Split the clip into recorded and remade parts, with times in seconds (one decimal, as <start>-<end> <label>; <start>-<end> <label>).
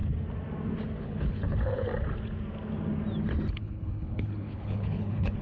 0.0-1.0 recorded; 1.0-1.9 remade; 1.9-3.5 recorded; 3.5-5.4 remade